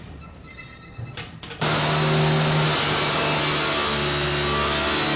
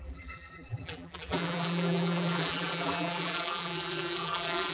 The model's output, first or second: second